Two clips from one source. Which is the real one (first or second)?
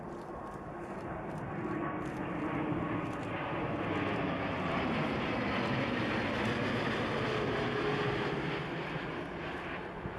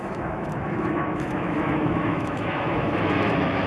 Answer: first